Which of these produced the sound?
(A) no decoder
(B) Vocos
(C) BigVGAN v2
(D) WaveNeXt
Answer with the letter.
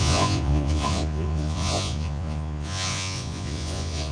B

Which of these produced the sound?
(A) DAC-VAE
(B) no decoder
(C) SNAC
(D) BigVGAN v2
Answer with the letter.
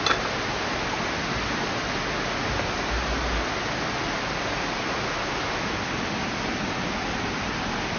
B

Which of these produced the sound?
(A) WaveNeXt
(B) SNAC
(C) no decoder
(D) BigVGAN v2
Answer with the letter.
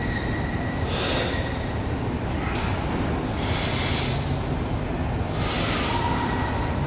C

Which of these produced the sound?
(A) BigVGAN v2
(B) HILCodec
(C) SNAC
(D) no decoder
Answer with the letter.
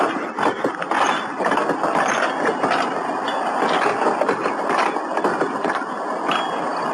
D